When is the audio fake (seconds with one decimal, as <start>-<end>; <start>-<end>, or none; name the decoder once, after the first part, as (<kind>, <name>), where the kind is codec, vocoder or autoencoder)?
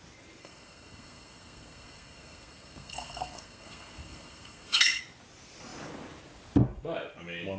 0.4-5.0 (codec, SNAC)